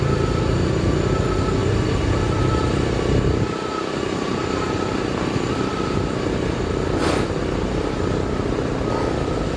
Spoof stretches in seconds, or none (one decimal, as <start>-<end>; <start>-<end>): 1.6-5.6